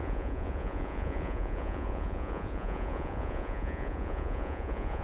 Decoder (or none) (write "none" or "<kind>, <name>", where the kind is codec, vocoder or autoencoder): vocoder, Vocos